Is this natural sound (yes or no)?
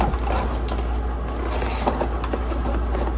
yes